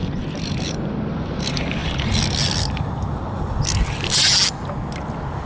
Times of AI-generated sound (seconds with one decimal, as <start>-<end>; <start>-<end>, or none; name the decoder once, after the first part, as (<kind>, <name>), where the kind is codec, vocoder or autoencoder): none